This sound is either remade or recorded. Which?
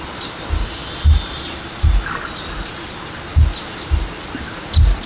recorded